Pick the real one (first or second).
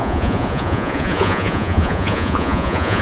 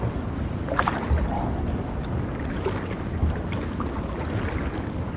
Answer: second